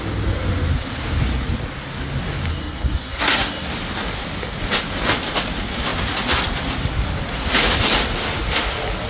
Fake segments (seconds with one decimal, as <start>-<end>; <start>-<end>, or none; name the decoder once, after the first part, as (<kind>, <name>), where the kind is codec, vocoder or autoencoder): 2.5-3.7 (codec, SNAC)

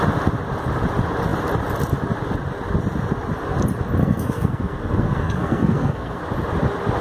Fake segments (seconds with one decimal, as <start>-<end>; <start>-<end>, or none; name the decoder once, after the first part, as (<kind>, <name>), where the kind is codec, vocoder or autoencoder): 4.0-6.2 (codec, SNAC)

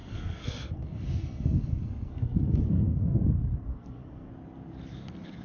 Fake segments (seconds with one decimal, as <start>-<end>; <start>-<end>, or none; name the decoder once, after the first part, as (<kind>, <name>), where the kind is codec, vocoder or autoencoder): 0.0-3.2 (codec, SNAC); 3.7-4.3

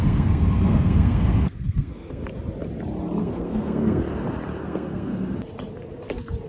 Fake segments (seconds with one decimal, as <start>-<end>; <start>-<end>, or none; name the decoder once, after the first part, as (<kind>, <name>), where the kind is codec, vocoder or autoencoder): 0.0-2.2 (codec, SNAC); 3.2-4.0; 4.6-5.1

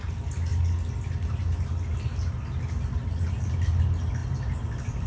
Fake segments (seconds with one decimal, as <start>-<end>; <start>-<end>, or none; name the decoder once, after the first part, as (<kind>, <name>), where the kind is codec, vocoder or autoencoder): none

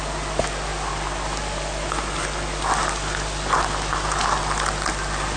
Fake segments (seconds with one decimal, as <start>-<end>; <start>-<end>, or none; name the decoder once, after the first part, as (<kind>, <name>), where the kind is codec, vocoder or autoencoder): none

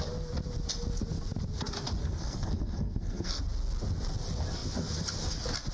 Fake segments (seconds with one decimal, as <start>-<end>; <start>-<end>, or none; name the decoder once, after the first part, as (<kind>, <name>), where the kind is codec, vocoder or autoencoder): 2.0-3.4 (codec, SNAC)